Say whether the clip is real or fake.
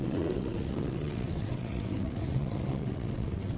fake